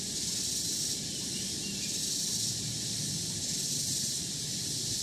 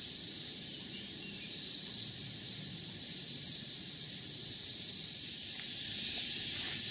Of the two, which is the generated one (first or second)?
second